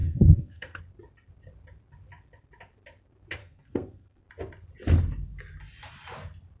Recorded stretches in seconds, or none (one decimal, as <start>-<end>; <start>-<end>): 0.8-3.4; 4.2-6.6